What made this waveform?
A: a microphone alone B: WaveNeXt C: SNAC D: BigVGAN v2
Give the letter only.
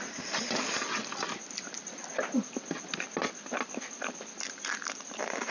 A